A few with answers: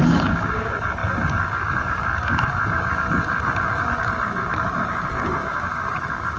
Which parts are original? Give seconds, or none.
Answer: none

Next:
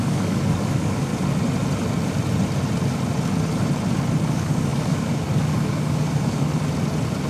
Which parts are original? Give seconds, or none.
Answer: 1.1-4.3; 6.5-7.3

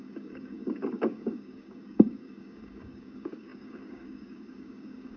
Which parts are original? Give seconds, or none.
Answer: none